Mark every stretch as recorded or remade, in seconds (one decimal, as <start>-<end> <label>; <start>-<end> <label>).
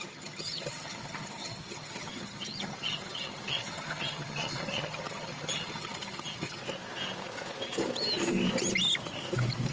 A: 0.0-6.6 remade; 6.6-9.7 recorded